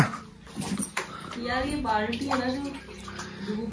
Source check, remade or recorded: recorded